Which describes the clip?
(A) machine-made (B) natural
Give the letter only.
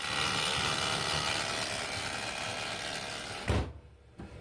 B